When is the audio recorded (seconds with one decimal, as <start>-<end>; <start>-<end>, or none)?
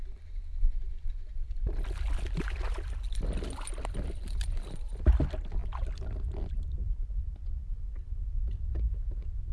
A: 0.0-9.5